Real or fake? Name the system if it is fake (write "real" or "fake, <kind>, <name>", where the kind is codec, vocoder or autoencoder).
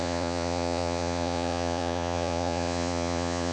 fake, vocoder, Vocos